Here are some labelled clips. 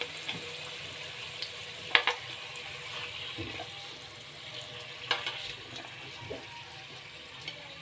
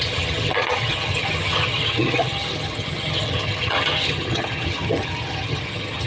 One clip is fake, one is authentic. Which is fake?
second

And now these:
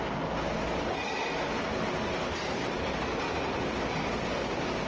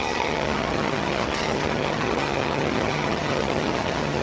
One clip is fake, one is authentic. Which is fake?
second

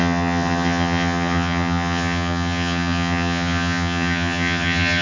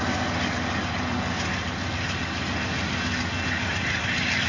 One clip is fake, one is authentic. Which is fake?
first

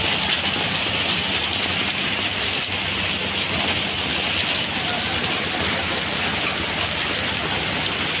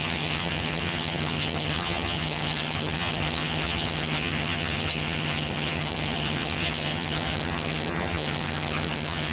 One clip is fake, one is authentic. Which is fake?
second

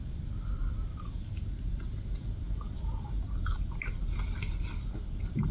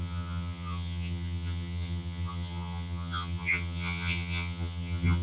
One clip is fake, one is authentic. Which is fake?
second